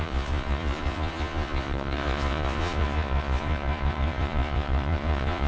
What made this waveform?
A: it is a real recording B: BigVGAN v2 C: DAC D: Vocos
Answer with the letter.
D